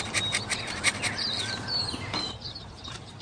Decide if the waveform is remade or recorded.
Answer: remade